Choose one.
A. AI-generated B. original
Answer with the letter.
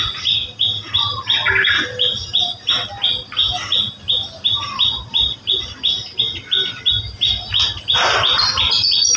B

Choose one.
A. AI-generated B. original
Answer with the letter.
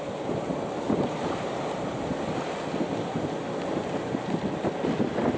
B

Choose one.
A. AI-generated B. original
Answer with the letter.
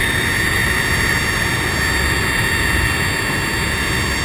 B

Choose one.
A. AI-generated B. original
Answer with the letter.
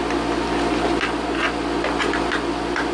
B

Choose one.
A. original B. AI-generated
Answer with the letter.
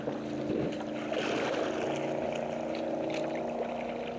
A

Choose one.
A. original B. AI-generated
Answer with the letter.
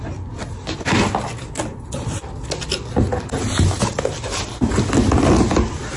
A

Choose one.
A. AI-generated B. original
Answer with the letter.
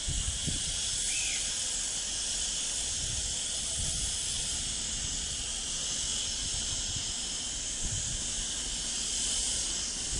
B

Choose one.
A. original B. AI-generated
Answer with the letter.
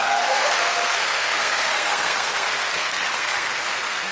B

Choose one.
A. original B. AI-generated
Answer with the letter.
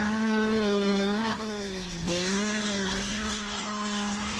B